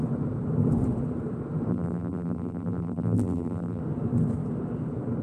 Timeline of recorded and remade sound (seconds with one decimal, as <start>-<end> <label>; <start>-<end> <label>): 0.0-1.7 recorded; 1.7-3.8 remade; 3.8-5.2 recorded